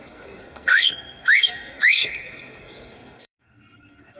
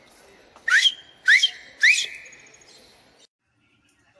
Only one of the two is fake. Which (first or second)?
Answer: first